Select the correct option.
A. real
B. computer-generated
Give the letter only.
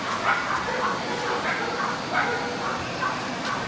A